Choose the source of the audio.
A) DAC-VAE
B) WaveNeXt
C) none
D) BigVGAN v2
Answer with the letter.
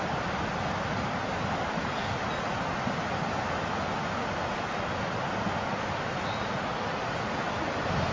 C